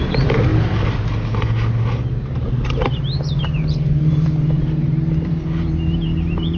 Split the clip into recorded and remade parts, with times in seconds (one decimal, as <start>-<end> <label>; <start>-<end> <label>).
0.0-0.5 remade; 0.5-2.5 recorded; 2.5-6.6 remade

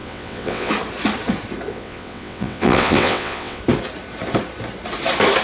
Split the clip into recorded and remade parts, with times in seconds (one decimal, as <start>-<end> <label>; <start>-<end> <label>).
0.0-0.7 remade; 0.7-1.7 recorded; 1.7-3.6 remade; 3.6-5.4 recorded